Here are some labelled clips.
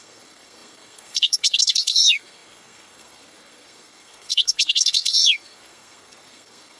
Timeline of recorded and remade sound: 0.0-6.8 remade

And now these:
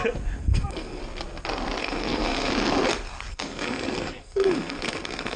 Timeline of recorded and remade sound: 0.0-0.4 recorded; 0.4-1.0 remade; 1.0-1.8 recorded; 1.8-2.5 remade; 2.5-3.3 recorded; 3.3-5.4 remade

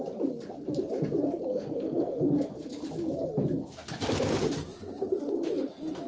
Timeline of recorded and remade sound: 0.0-1.5 recorded; 1.5-2.3 remade; 2.3-6.1 recorded